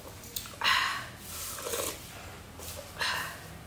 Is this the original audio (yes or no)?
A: yes